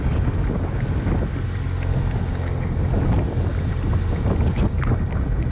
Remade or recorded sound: recorded